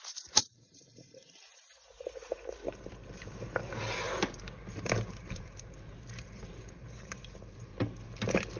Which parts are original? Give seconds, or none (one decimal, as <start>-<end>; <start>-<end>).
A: 3.0-4.7; 7.7-8.6